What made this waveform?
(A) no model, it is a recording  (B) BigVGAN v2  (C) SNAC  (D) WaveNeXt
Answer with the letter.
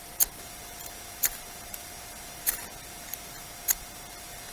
A